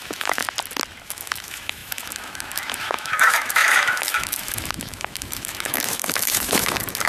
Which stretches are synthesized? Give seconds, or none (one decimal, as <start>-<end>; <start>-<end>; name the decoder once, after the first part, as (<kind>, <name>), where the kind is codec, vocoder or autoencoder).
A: 0.0-0.4 (autoencoder, DAC-VAE); 1.0-7.1

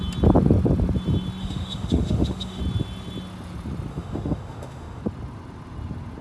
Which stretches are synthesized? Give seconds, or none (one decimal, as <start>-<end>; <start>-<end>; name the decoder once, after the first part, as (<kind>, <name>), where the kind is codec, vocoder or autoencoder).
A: 1.4-2.6 (autoencoder, DAC-VAE); 3.9-5.0

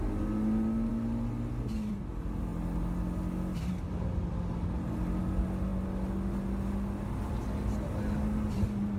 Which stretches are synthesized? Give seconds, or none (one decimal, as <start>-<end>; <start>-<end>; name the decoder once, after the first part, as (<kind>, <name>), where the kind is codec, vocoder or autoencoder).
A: none

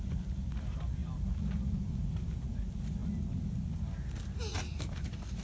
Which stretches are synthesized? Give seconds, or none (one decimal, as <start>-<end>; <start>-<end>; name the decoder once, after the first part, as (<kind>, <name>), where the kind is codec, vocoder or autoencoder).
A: none